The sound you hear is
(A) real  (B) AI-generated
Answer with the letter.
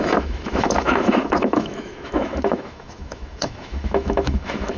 B